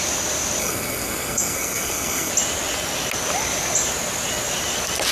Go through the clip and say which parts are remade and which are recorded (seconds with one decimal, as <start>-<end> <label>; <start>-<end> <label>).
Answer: 0.0-0.6 recorded; 0.6-2.3 remade; 2.3-5.1 recorded